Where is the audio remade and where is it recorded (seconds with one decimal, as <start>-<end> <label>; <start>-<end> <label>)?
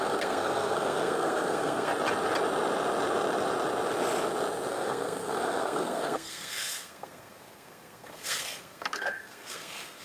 0.0-1.9 remade; 1.9-4.7 recorded; 4.7-10.0 remade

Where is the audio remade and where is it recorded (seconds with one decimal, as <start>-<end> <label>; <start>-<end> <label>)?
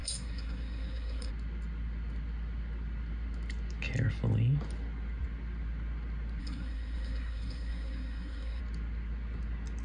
0.0-1.3 remade; 1.3-6.4 recorded; 6.4-8.6 remade; 8.6-9.8 recorded